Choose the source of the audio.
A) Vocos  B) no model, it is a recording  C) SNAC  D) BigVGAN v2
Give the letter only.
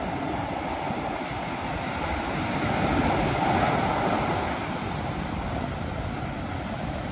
B